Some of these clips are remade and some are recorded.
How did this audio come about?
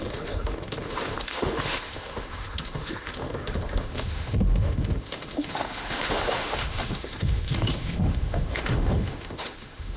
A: remade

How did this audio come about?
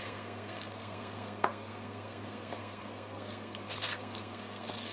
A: remade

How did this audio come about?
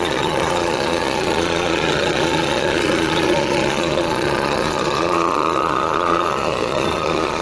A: remade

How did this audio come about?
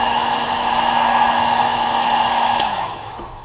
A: remade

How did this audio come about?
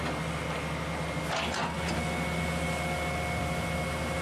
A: recorded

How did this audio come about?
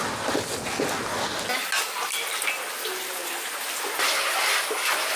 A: recorded